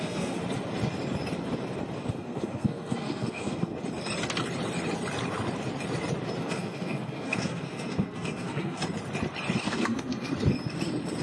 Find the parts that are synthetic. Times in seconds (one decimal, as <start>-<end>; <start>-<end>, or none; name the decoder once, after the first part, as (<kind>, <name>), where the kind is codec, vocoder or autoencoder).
0.0-0.4 (codec, SNAC); 2.1-3.7; 6.4-8.8; 9.6-10.3